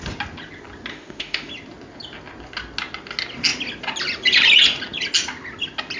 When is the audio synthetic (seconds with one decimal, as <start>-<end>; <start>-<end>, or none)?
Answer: 0.9-1.5